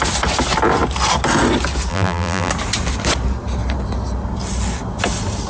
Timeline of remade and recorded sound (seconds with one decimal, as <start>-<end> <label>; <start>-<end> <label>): 0.0-1.9 recorded; 1.9-2.5 remade; 2.5-5.5 recorded